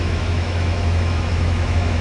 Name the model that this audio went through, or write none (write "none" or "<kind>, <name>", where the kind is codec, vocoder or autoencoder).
autoencoder, DAC-VAE